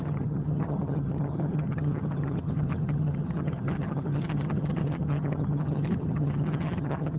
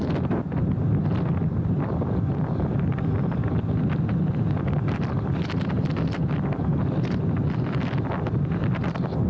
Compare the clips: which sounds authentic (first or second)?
second